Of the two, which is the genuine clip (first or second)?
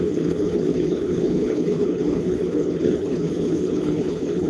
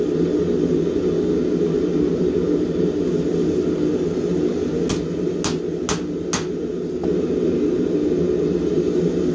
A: second